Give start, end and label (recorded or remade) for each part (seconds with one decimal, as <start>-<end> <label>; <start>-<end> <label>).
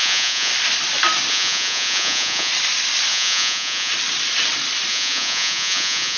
0.0-0.5 remade; 0.5-1.3 recorded; 1.3-2.5 remade; 2.5-3.1 recorded; 3.1-3.9 remade; 3.9-4.9 recorded; 4.9-6.2 remade